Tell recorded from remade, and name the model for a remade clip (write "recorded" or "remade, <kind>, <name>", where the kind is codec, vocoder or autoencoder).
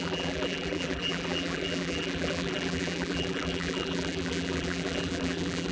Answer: remade, vocoder, BigVGAN v2